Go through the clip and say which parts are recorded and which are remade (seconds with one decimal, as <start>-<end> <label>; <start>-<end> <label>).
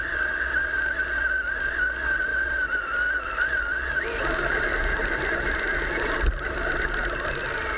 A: 0.0-7.8 recorded